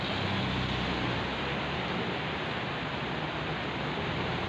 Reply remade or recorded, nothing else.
recorded